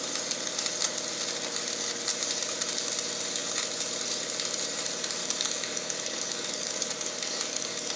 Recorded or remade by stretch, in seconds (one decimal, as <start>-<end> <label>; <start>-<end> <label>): 0.0-5.2 recorded; 5.2-8.0 remade